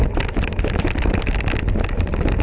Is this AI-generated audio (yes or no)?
no